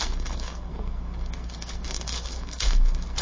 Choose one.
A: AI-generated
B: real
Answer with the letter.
A